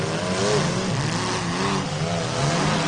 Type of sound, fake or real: real